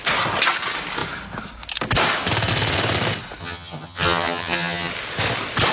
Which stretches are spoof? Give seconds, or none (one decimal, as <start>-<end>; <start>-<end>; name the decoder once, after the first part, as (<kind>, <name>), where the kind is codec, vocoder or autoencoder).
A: 3.4-4.9 (vocoder, HiFi-GAN)